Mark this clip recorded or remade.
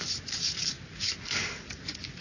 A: recorded